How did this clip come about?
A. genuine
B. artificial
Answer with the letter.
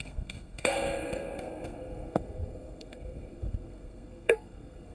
B